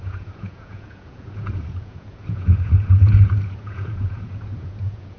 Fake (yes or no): yes